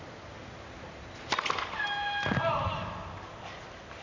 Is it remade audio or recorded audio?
recorded